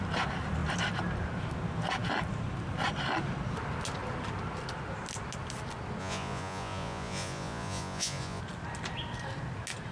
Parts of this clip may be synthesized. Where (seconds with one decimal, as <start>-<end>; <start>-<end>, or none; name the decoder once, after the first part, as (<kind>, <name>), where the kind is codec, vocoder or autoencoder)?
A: 6.0-8.4 (vocoder, Vocos)